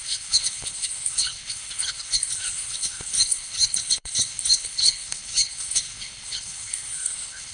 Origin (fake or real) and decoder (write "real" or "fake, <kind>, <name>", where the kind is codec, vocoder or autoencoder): fake, codec, HILCodec